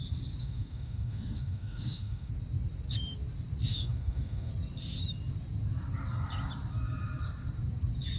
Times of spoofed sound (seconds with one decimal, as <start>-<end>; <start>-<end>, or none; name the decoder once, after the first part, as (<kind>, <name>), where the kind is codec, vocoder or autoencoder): 0.4-2.3 (autoencoder, DAC-VAE); 3.7-4.5